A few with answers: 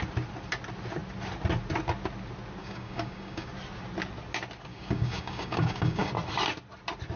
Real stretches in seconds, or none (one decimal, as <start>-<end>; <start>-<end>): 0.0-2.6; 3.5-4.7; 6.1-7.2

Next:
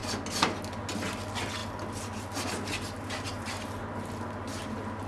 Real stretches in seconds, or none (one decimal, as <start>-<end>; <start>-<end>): 0.0-5.1

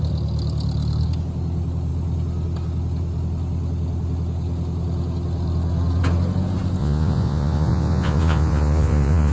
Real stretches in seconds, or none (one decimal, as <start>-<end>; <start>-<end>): 0.0-6.8

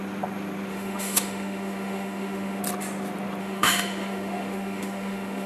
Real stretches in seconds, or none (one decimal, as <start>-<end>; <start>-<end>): 0.0-0.7; 2.6-3.4

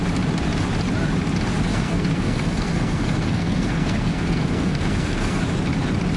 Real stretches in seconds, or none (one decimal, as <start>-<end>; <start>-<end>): 0.0-1.7; 5.4-6.2

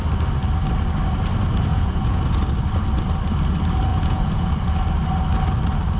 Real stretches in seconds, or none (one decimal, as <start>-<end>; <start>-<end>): 0.0-1.7; 2.2-3.9; 4.5-6.0